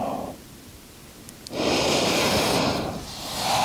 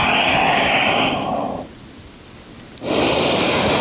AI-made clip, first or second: first